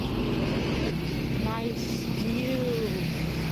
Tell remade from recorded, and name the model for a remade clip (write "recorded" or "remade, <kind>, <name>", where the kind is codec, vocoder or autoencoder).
recorded